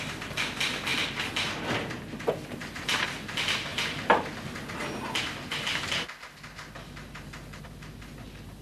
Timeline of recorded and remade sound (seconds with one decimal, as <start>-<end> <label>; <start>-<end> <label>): 0.0-8.6 recorded